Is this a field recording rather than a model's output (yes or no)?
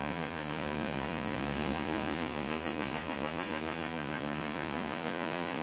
no